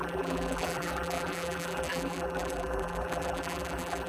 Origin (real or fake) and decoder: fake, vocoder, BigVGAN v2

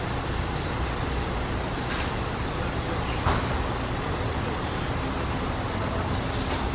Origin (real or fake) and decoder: real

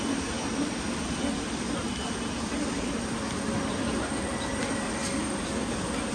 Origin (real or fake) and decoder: real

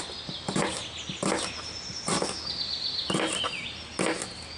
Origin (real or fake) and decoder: real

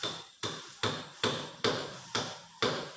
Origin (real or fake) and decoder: fake, vocoder, BigVGAN v2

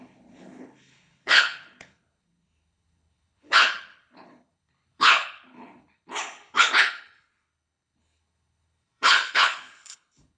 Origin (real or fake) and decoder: fake, codec, HILCodec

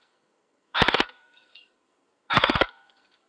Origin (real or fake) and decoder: fake, codec, SNAC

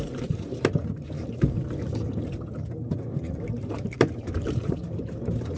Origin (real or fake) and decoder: fake, vocoder, BigVGAN v2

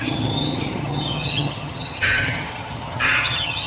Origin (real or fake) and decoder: fake, vocoder, HiFi-GAN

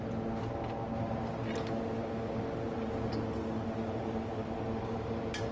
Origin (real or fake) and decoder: real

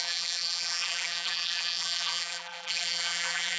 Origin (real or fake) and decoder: fake, vocoder, BigVGAN v2